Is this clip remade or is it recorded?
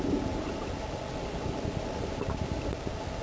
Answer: recorded